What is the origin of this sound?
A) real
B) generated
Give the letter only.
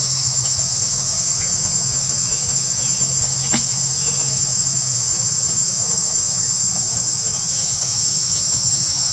B